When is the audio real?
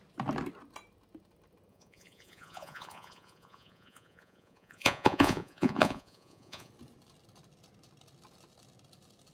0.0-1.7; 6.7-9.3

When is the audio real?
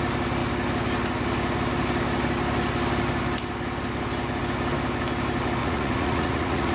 0.0-5.6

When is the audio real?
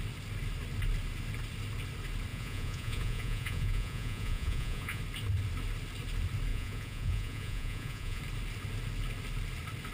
0.0-2.3; 5.0-6.5; 8.2-9.9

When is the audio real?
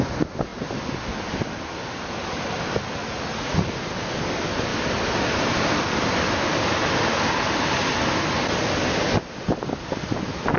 0.0-3.0; 3.7-10.6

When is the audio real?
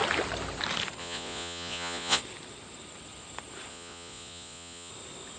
0.0-1.0; 2.2-3.7; 4.9-5.4